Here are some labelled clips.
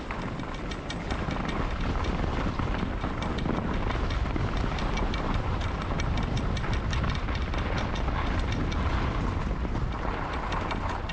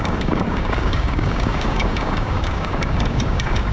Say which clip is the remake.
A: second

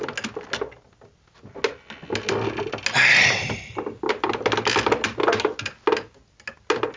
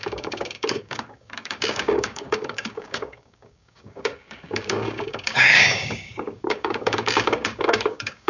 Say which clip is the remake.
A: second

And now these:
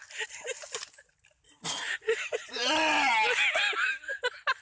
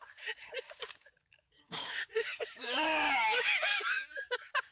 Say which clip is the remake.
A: second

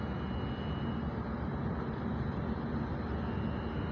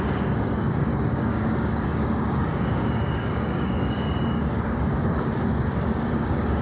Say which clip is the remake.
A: second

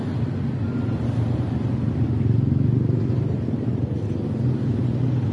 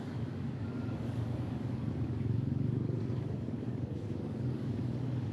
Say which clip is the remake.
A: second